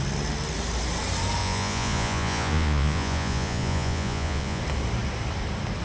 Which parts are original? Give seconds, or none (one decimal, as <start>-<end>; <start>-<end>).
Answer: 0.0-1.4; 4.6-5.8